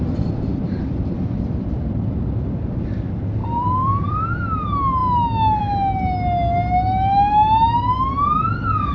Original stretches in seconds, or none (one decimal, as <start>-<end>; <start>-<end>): 0.0-0.5; 1.6-3.4; 4.4-8.9